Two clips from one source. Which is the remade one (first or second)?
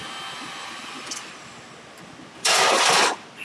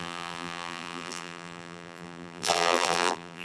second